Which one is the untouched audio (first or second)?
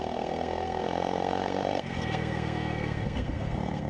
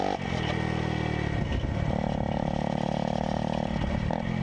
second